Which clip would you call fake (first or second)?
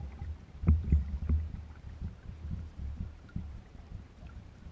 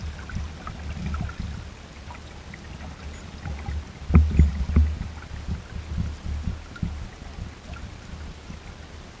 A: first